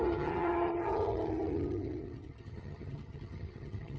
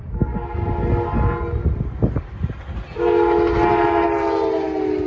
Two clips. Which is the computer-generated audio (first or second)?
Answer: first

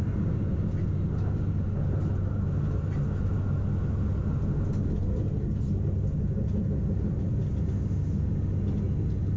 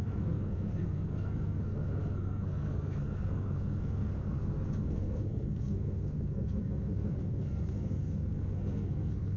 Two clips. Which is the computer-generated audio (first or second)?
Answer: second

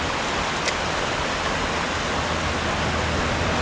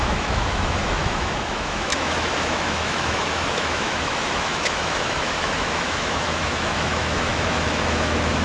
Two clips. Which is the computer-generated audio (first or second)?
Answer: second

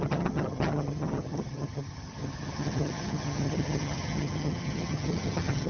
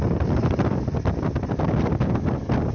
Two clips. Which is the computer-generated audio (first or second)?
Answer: first